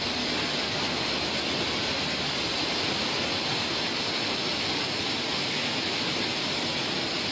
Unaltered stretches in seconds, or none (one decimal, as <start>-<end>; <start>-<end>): 0.0-7.3